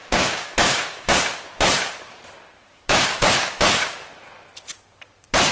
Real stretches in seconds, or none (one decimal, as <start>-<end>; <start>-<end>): 1.2-2.6; 4.1-5.5